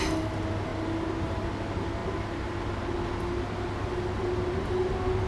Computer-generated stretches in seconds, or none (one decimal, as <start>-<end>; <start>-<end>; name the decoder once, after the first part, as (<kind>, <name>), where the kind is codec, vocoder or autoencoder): none